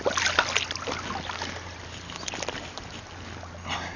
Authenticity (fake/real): real